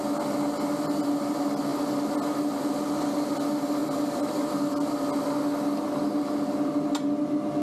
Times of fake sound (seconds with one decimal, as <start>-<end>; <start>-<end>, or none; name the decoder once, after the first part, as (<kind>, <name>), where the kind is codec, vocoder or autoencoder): 3.8-4.9 (vocoder, BigVGAN v2)